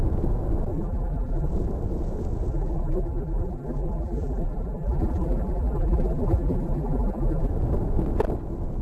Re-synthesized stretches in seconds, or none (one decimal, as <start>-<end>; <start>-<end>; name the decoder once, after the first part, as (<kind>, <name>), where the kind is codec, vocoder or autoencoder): 0.7-1.5 (vocoder, BigVGAN v2); 2.5-7.5

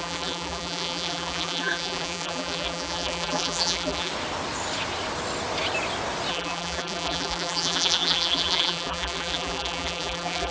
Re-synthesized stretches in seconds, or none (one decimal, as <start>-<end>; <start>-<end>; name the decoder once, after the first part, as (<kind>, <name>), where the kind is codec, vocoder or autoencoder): 0.0-4.1 (vocoder, BigVGAN v2); 6.3-10.5

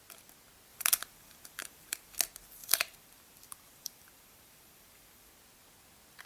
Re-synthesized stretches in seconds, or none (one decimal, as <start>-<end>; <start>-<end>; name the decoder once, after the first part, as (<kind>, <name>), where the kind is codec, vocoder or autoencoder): 0.7-2.2 (vocoder, BigVGAN v2); 2.6-5.3

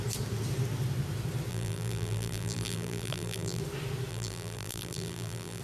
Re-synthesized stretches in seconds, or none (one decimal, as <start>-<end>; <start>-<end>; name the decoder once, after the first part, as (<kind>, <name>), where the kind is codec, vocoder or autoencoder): 1.5-3.6 (vocoder, BigVGAN v2); 4.1-5.6

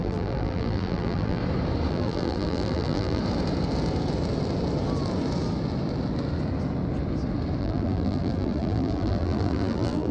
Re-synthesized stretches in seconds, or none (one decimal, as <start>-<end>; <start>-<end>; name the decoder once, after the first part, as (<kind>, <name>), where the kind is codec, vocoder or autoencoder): 0.0-1.4 (vocoder, BigVGAN v2); 1.9-3.2; 7.6-10.1

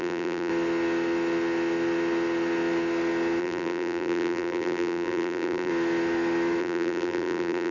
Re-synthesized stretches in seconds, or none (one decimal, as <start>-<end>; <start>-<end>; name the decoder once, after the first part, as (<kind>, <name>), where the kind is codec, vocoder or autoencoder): 0.0-0.5 (vocoder, BigVGAN v2); 3.4-5.7; 6.6-7.7

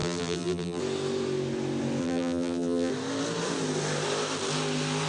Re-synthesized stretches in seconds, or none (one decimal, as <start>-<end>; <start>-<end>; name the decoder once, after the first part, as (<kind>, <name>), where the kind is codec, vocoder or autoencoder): 0.0-0.8 (vocoder, BigVGAN v2); 2.0-2.9